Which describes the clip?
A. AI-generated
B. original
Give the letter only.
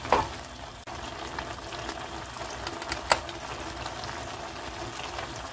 B